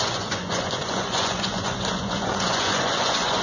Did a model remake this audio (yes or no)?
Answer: yes